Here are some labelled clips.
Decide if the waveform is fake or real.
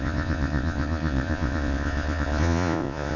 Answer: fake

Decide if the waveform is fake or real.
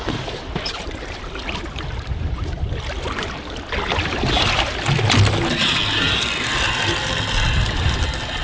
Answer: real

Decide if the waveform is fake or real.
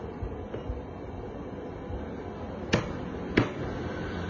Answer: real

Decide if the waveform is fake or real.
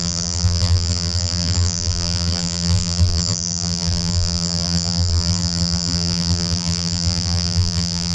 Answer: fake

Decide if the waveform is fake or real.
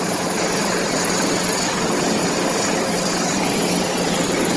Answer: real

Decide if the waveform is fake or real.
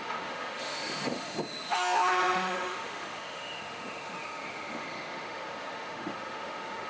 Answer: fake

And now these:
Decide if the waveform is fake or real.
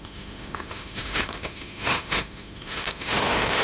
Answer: fake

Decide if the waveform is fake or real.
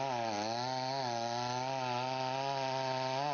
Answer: real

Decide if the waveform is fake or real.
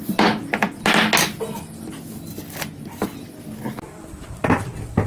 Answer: real